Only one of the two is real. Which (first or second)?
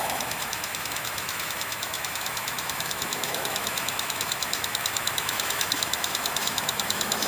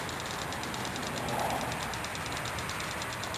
second